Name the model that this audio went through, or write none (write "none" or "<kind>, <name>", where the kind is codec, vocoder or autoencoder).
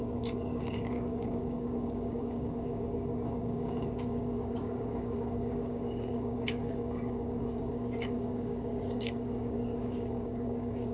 codec, DAC